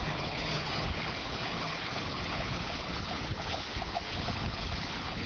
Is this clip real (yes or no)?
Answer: no